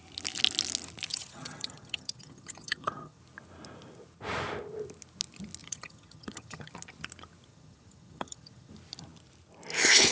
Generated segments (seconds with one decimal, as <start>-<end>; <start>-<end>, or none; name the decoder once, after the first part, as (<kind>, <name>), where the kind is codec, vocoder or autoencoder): 1.1-3.2 (vocoder, HiFi-GAN); 5.6-6.7; 7.5-8.7